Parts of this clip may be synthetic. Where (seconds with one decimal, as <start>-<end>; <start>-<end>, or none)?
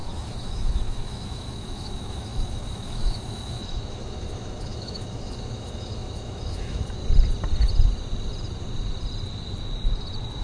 0.0-7.0